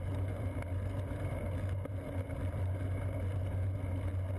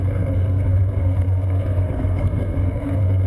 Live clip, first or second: first